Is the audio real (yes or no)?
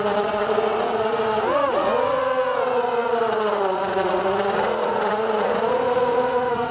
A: no